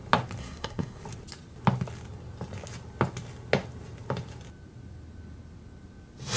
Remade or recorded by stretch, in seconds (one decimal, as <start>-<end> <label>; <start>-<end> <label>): 0.0-0.4 recorded; 0.4-1.0 remade; 1.0-6.4 recorded